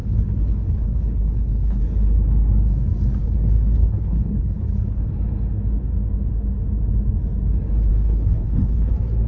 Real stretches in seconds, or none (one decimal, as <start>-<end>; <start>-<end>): 1.8-3.2; 5.1-7.9; 8.9-9.3